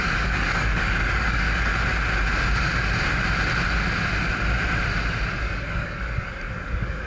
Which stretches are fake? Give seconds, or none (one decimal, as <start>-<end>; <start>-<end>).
0.0-1.7; 5.4-7.1